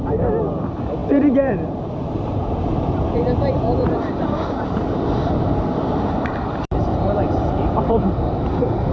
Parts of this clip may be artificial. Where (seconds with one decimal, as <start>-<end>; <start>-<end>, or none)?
0.0-8.9